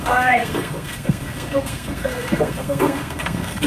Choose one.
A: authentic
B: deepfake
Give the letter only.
B